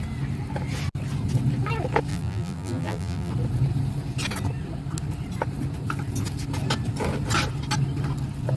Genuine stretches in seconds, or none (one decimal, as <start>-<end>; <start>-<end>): 0.0-2.1; 3.3-8.6